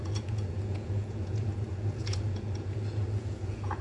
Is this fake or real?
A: fake